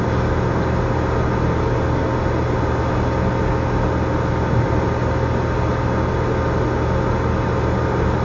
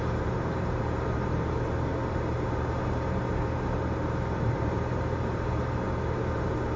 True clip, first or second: first